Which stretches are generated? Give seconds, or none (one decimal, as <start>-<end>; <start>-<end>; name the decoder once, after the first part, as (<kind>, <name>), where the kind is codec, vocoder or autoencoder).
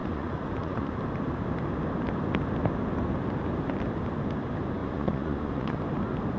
0.0-1.0 (vocoder, Vocos); 4.8-5.8